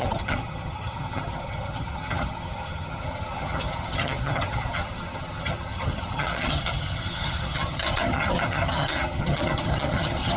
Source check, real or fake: fake